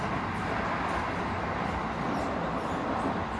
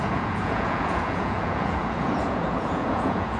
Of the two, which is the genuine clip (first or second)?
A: first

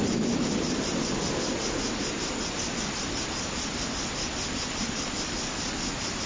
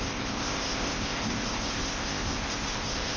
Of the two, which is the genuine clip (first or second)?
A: first